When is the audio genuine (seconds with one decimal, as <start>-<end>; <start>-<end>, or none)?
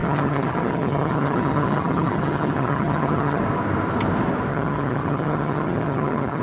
3.4-4.5